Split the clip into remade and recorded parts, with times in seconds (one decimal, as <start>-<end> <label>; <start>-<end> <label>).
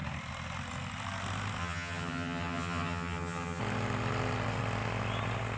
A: 0.0-1.6 recorded; 1.6-3.6 remade; 3.6-5.6 recorded